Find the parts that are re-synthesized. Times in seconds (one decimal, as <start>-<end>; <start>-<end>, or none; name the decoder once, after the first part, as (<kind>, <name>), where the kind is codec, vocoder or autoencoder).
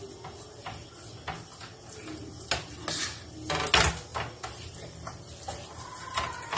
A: none